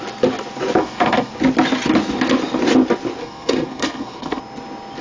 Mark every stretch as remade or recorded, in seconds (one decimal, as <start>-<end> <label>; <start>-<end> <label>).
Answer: 0.0-0.8 recorded; 0.8-1.3 remade; 1.3-3.2 recorded; 3.2-4.4 remade; 4.4-5.0 recorded